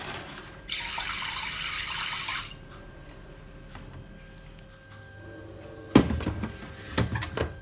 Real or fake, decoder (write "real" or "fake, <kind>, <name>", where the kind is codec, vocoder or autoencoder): real